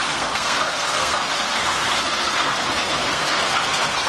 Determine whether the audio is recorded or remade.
remade